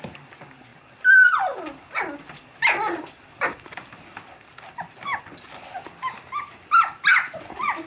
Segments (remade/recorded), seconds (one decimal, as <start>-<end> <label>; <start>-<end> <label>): 0.0-7.9 recorded